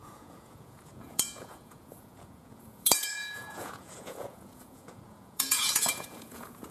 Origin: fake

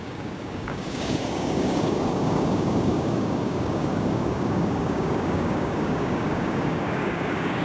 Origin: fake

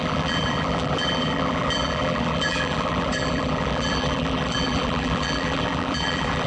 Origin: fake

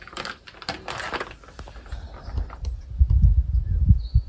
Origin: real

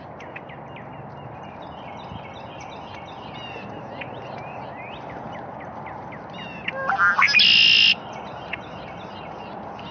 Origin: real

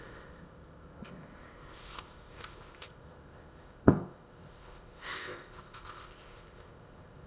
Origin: fake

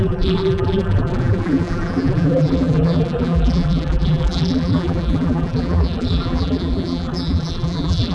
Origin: fake